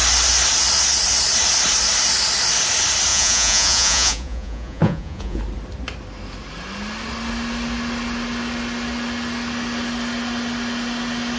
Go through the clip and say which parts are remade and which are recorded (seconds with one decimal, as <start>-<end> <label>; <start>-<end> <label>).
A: 0.0-3.1 recorded; 3.1-5.4 remade; 5.4-11.4 recorded